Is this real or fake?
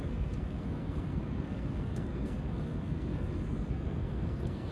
fake